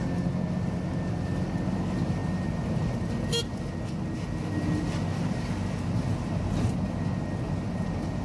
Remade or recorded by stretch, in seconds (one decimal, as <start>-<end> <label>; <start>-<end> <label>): 0.0-8.2 recorded